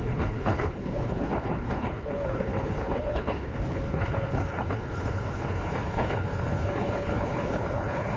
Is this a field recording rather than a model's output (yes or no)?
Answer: no